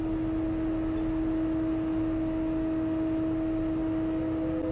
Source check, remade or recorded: recorded